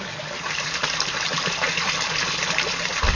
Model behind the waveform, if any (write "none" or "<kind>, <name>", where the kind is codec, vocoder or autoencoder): vocoder, BigVGAN v2